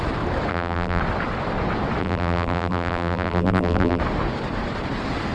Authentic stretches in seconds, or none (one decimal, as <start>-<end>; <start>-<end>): 0.0-0.5; 1.0-2.0; 4.0-5.3